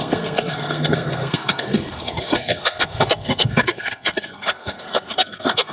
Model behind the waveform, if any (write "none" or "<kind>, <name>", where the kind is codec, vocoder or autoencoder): codec, SNAC